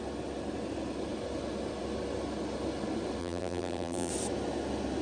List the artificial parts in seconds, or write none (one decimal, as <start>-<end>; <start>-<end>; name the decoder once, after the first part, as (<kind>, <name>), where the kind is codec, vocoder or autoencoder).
3.2-4.1 (vocoder, BigVGAN v2)